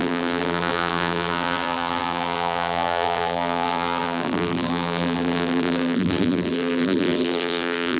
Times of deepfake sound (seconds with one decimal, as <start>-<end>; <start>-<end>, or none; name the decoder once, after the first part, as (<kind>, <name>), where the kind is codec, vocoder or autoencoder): 0.0-8.0 (vocoder, BigVGAN v2)